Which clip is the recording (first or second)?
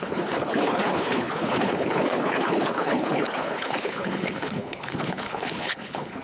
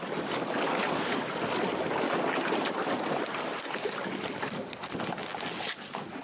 second